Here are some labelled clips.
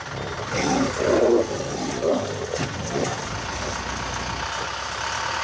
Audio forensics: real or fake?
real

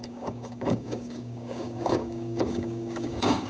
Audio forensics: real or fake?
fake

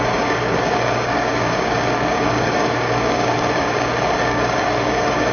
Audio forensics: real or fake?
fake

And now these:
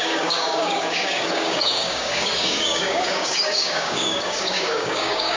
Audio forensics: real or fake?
fake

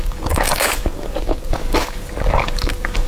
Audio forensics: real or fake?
fake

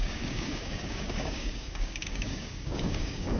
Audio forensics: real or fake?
fake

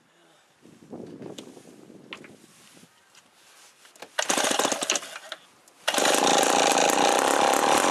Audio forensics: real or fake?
real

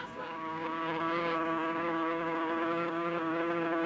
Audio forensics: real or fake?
fake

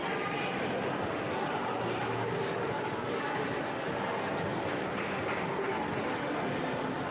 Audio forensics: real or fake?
real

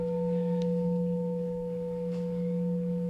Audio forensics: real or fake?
fake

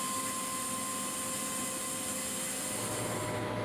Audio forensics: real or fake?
real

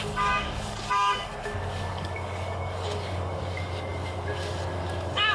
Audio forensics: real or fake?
fake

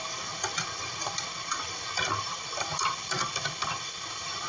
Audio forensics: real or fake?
real